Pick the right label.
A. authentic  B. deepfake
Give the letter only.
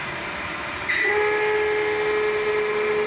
A